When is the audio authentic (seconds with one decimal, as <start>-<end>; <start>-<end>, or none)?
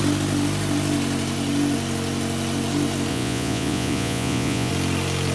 0.0-3.1; 4.7-5.3